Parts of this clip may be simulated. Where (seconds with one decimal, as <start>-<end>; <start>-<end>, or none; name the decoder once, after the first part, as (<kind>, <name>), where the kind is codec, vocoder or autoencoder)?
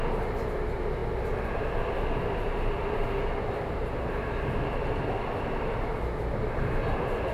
none